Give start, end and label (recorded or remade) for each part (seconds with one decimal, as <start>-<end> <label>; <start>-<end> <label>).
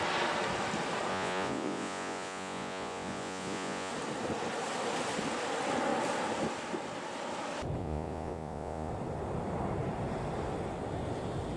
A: 0.0-1.1 recorded; 1.1-3.9 remade; 3.9-7.8 recorded; 7.8-8.9 remade; 8.9-11.6 recorded